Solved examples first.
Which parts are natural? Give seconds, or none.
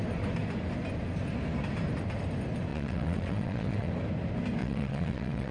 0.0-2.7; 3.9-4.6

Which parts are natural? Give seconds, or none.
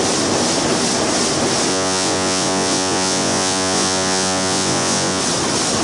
0.0-1.7; 5.2-5.8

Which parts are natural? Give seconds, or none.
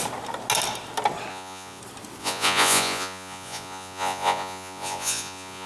0.0-1.3; 1.8-2.2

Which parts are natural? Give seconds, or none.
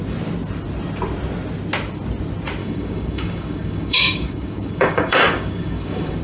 0.0-2.6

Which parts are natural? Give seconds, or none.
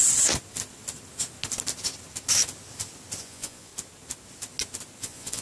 0.0-3.2; 3.7-5.0